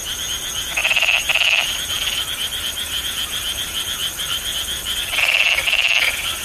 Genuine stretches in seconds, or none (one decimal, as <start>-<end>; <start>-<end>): none